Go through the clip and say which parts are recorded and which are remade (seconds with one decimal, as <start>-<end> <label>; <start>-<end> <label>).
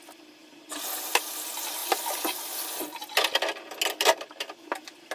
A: 0.0-5.1 recorded